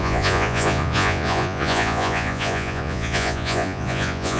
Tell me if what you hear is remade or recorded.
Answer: remade